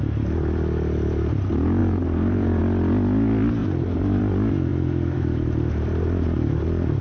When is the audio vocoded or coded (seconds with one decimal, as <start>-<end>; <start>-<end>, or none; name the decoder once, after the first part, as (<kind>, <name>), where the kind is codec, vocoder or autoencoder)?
1.8-2.6 (vocoder, BigVGAN v2); 3.6-4.2; 4.7-7.0